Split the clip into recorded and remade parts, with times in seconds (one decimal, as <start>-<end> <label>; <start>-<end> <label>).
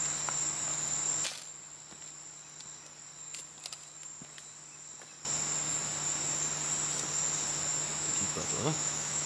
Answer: 0.0-7.9 recorded; 7.9-9.3 remade